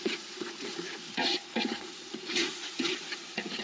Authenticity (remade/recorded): remade